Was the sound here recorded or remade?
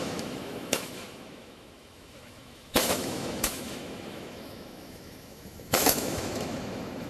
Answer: remade